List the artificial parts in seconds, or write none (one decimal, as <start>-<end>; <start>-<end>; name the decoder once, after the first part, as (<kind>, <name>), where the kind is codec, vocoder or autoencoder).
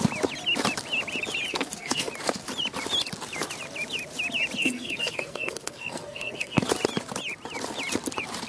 1.5-2.1 (codec, SNAC); 4.6-6.7